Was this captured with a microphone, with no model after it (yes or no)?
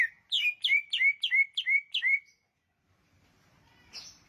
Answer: yes